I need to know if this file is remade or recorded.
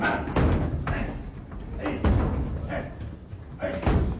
recorded